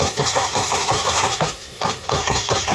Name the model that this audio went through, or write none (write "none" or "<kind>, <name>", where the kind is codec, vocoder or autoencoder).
codec, SNAC